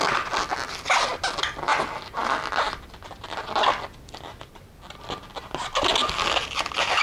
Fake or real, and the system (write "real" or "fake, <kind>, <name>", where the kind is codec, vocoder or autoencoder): real